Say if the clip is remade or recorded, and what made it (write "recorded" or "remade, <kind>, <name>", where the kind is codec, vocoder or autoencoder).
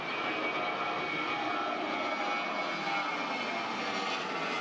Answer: recorded